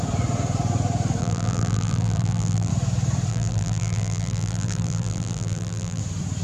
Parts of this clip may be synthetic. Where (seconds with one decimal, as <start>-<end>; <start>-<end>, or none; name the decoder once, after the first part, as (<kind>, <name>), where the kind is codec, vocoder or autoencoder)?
1.2-2.7 (vocoder, BigVGAN v2); 3.3-6.0